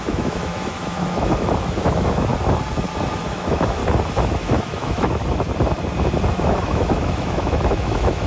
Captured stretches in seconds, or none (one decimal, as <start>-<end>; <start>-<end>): 2.3-3.1; 3.8-4.3; 5.2-6.3